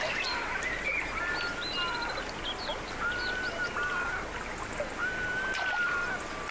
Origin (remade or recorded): recorded